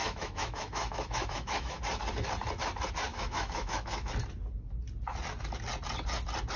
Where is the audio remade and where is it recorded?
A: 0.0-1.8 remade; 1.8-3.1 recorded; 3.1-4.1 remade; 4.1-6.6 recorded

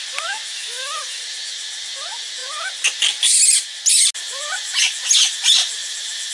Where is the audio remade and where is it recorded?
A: 0.0-0.5 recorded; 0.5-1.2 remade; 1.2-6.3 recorded

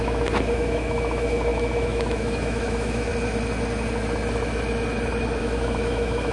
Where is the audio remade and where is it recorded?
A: 0.0-3.1 remade; 3.1-5.4 recorded; 5.4-6.3 remade